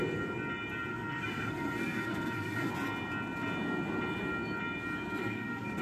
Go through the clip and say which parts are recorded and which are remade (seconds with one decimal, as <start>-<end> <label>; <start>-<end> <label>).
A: 0.0-0.9 recorded; 0.9-2.7 remade; 2.7-5.2 recorded; 5.2-5.8 remade